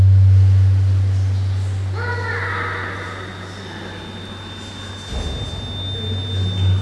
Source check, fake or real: real